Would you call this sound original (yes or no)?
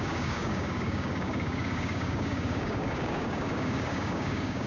no